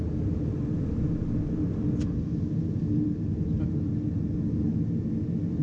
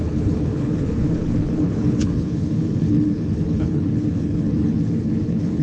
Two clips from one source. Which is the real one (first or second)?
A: first